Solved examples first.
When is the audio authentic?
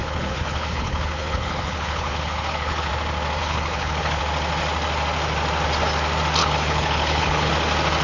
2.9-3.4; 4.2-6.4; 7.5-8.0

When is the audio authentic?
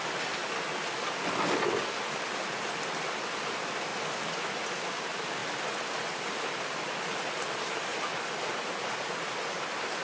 0.0-10.0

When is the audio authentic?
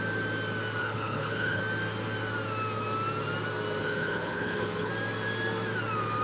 0.0-0.8; 1.6-3.8; 4.9-6.2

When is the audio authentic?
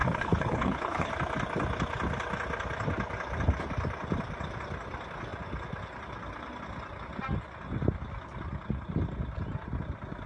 1.1-10.3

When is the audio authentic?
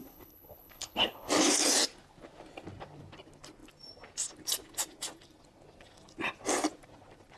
1.3-7.4